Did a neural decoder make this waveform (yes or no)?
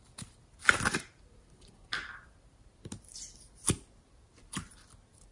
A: no